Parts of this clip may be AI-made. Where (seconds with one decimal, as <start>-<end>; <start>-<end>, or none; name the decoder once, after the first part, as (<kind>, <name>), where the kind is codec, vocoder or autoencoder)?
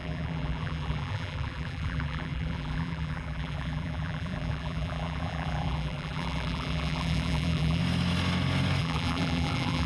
0.0-7.8 (vocoder, BigVGAN v2); 8.8-9.9